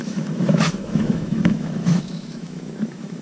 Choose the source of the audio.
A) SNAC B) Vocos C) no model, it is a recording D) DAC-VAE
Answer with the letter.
D